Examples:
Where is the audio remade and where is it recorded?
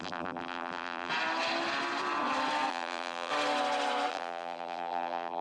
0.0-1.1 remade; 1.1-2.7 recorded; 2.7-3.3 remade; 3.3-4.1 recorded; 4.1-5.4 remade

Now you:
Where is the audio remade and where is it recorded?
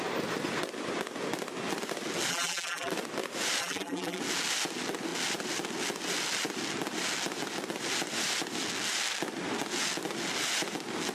0.0-2.3 recorded; 2.3-2.9 remade; 2.9-3.6 recorded; 3.6-4.2 remade; 4.2-11.1 recorded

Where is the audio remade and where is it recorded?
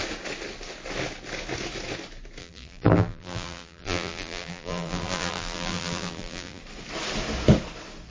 0.0-2.4 recorded; 2.4-6.6 remade; 6.6-8.1 recorded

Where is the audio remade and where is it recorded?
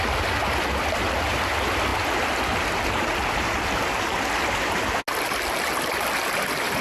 0.0-6.8 recorded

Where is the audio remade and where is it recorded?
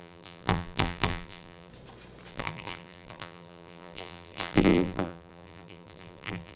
0.0-1.7 remade; 1.7-2.3 recorded; 2.3-6.6 remade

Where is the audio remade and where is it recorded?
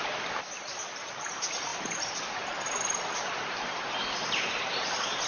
0.0-5.3 remade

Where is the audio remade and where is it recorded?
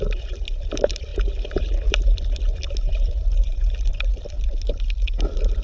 0.0-5.6 remade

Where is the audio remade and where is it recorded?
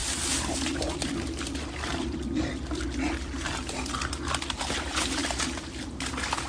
0.0-6.5 recorded